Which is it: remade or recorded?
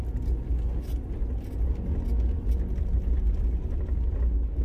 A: recorded